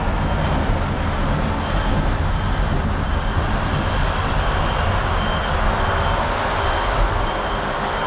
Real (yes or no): yes